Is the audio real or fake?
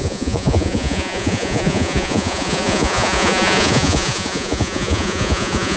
fake